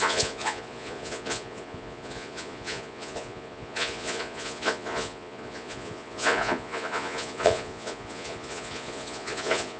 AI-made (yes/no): yes